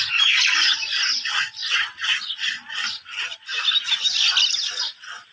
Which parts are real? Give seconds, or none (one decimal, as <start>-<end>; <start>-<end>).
0.0-5.3